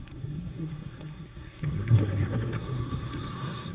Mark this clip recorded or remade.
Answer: remade